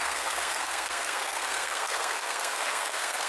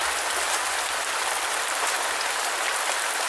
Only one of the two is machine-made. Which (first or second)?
first